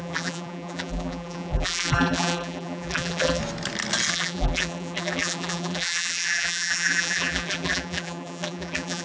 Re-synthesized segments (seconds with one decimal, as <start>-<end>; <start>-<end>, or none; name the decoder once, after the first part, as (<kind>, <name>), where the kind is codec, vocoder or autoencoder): 0.0-3.4 (vocoder, BigVGAN v2); 4.1-9.0

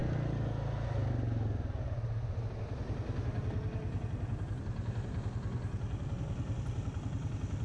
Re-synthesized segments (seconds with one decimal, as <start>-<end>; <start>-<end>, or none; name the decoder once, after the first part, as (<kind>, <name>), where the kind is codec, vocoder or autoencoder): none

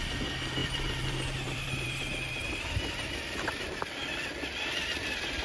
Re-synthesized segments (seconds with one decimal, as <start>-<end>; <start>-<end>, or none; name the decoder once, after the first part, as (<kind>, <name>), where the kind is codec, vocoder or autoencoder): 0.6-3.8 (vocoder, BigVGAN v2)

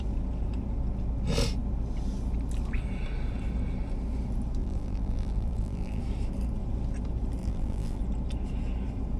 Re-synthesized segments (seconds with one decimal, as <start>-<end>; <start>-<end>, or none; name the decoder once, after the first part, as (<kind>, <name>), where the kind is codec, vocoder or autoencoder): 4.6-6.0 (vocoder, BigVGAN v2); 7.4-8.0

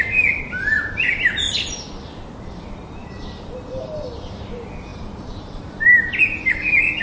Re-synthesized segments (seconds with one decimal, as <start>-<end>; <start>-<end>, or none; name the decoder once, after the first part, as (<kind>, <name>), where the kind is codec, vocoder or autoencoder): 4.9-6.2 (vocoder, BigVGAN v2)

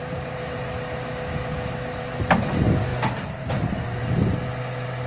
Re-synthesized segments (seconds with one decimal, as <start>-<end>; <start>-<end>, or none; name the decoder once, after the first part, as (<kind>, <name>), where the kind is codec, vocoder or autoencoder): 0.0-0.6 (vocoder, BigVGAN v2)

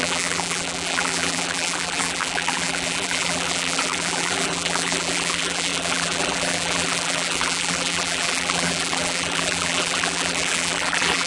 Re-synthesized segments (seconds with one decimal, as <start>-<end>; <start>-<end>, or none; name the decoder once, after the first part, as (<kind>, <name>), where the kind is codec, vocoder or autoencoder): 0.0-11.3 (vocoder, BigVGAN v2)